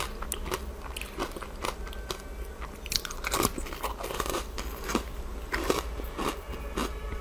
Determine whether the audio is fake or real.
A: real